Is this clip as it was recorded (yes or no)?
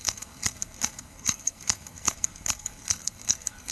no